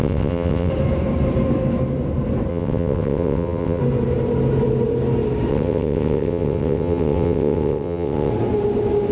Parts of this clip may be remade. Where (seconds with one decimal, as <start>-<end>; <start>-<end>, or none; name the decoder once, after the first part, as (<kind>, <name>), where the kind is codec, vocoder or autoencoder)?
0.0-0.7 (vocoder, WaveNeXt); 2.5-3.8; 5.5-8.3